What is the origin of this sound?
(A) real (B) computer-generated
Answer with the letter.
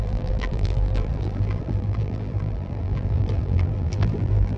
B